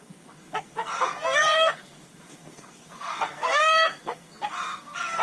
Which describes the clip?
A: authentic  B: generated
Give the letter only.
B